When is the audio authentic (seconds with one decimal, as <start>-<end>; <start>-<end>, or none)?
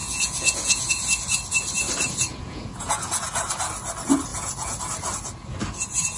0.9-2.3; 3.5-4.3; 4.8-6.2